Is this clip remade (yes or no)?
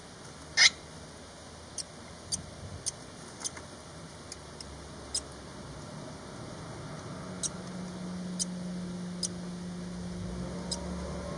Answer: no